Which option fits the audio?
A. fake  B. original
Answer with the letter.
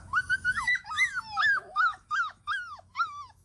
A